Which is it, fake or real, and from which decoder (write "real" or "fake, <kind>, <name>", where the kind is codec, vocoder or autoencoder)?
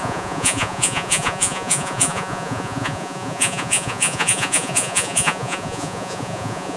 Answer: fake, vocoder, Vocos